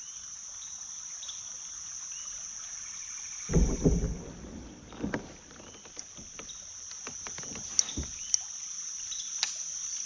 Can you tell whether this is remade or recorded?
recorded